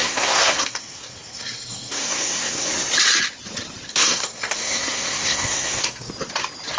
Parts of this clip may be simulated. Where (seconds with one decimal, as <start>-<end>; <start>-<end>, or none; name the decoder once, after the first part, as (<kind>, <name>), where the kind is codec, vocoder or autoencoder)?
0.0-2.7 (codec, SNAC); 3.9-6.1